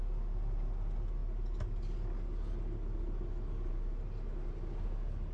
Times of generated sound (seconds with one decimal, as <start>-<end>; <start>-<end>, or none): none